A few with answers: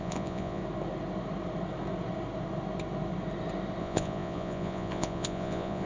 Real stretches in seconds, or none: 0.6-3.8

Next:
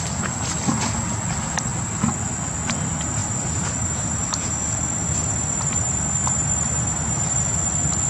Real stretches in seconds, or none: 0.0-8.1

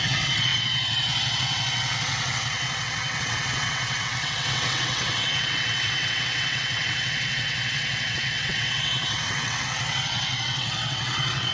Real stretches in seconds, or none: none

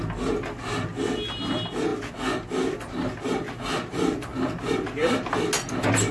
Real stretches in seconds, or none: 0.0-6.1

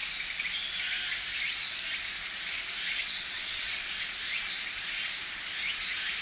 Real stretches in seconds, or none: 0.0-3.0; 3.9-6.2

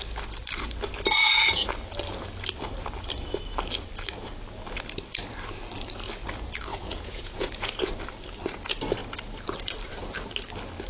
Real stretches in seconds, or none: 0.0-1.2; 1.7-6.7; 7.9-10.9

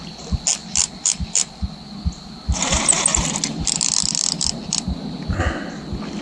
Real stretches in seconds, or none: 0.0-0.6; 1.5-6.2